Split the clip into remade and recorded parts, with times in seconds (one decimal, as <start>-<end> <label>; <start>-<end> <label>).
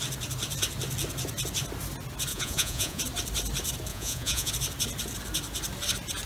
0.0-2.3 recorded; 2.3-3.0 remade; 3.0-3.9 recorded; 3.9-4.5 remade; 4.5-6.3 recorded